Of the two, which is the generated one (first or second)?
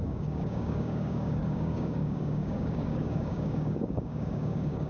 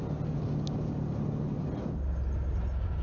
first